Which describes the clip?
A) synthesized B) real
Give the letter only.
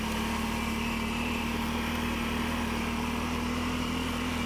B